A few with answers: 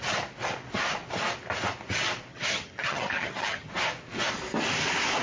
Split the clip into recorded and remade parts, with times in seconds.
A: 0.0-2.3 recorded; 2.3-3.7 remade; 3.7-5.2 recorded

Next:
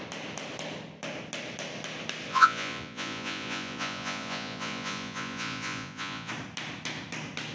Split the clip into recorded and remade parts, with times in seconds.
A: 0.0-2.3 recorded; 2.3-6.3 remade; 6.3-7.5 recorded

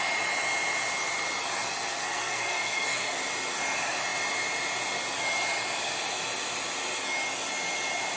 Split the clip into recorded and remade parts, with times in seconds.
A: 0.0-1.9 recorded; 1.9-3.2 remade; 3.2-8.2 recorded

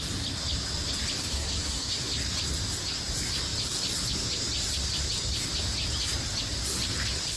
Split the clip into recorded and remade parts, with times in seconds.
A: 0.0-1.2 recorded; 1.2-2.1 remade; 2.1-7.4 recorded